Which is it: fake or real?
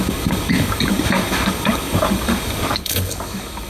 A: fake